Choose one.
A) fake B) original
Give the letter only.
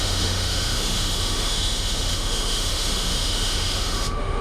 A